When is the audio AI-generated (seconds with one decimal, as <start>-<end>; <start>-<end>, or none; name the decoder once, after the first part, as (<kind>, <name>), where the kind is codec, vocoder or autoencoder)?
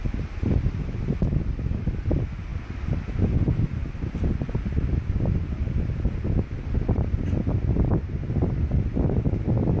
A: none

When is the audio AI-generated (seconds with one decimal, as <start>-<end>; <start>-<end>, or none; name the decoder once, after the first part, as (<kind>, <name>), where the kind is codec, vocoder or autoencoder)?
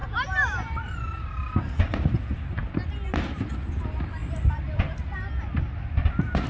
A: none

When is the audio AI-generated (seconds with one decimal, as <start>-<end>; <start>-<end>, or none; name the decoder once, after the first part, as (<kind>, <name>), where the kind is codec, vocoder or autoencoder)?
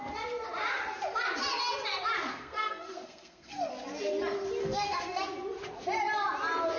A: 2.3-3.7 (codec, SNAC); 4.6-5.2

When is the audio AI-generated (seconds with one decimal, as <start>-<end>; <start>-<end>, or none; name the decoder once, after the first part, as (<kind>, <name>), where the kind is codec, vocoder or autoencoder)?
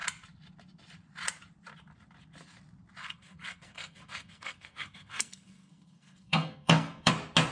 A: 3.0-7.1 (codec, SNAC)